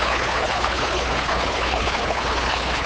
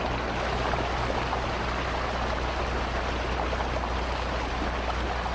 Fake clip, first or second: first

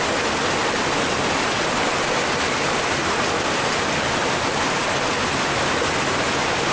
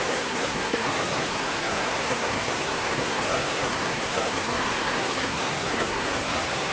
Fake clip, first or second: second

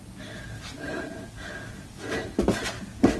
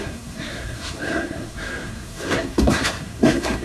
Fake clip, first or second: second